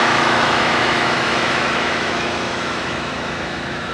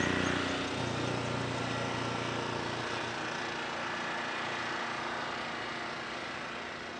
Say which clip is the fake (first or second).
first